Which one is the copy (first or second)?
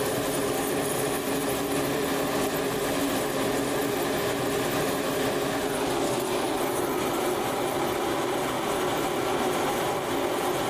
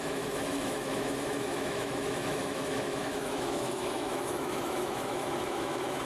second